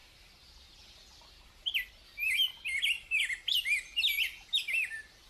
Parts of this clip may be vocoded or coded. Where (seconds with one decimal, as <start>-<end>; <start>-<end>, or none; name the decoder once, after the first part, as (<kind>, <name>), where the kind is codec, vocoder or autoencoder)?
none